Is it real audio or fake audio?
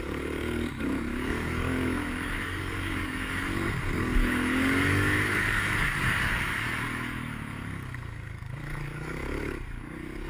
fake